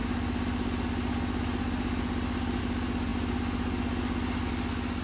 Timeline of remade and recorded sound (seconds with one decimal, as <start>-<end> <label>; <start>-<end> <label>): 0.0-5.0 recorded